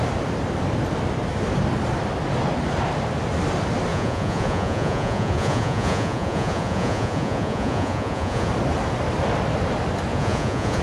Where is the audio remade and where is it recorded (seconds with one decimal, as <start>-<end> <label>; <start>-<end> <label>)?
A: 0.0-3.9 recorded; 3.9-8.5 remade; 8.5-10.1 recorded; 10.1-10.8 remade